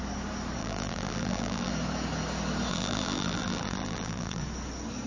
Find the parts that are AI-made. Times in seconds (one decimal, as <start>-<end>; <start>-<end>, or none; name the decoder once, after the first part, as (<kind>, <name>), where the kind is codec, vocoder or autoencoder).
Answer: 0.6-1.7 (vocoder, BigVGAN v2); 2.7-4.4